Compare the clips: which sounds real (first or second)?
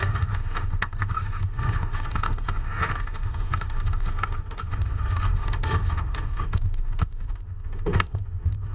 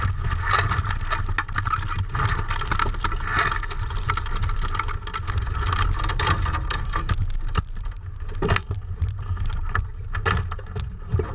second